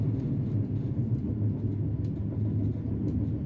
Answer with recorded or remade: recorded